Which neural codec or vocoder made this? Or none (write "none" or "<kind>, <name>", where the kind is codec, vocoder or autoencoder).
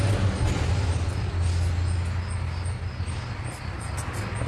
none